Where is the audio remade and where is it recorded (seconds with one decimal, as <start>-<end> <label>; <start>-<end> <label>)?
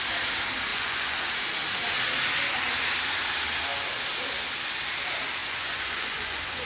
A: 0.0-0.7 recorded; 0.7-1.3 remade; 1.3-5.4 recorded; 5.4-6.7 remade